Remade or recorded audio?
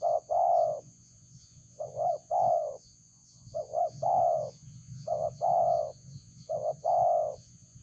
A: remade